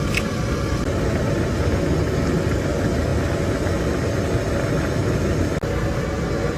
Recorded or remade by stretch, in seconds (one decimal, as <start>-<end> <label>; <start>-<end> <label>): 0.0-6.6 recorded